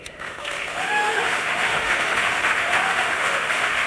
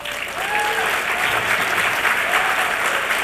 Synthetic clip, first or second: first